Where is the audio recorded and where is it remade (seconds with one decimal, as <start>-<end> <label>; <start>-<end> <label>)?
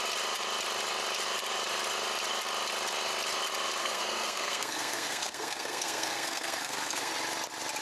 0.0-3.8 recorded; 3.8-7.1 remade; 7.1-7.8 recorded